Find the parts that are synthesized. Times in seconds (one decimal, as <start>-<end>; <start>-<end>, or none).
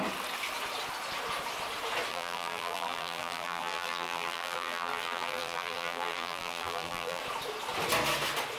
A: 2.1-7.2